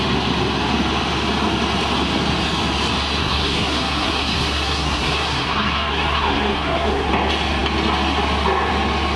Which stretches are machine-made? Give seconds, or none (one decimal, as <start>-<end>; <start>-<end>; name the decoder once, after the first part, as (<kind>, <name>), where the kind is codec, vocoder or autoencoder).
3.2-7.1 (codec, SNAC)